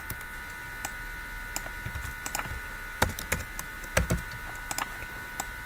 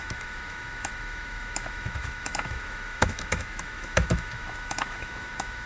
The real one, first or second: first